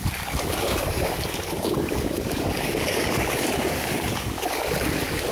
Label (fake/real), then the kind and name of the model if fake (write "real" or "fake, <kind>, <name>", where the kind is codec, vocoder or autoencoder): fake, codec, DAC